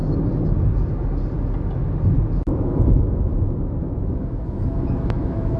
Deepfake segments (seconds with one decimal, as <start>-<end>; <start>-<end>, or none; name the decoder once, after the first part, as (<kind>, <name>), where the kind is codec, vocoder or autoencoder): 2.5-5.6 (autoencoder, DAC-VAE)